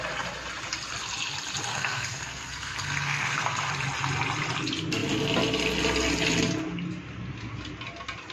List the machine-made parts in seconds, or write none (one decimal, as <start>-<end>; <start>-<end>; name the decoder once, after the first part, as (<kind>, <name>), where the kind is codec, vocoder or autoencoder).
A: 1.7-3.7 (codec, SNAC)